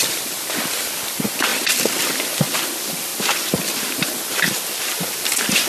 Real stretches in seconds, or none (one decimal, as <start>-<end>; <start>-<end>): 0.0-5.7